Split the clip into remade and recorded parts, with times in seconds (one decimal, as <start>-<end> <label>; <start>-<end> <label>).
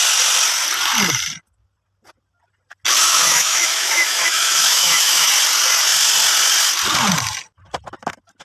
0.0-3.1 recorded; 3.1-5.3 remade; 5.3-8.4 recorded